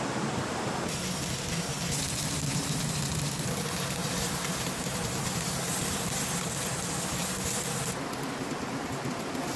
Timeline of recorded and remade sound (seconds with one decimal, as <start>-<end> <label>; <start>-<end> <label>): 0.0-4.0 recorded; 4.0-6.0 remade; 6.0-9.6 recorded